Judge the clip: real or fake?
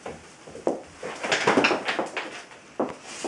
real